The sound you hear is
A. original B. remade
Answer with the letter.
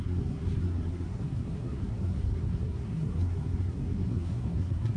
B